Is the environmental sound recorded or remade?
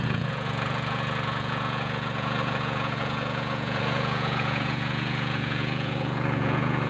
remade